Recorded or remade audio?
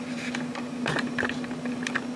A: remade